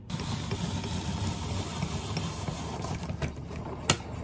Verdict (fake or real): real